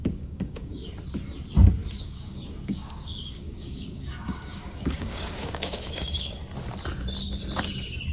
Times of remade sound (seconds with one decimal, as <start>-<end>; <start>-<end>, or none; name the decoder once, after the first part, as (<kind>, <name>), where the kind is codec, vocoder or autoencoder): 0.0-0.8 (codec, DAC); 2.0-6.4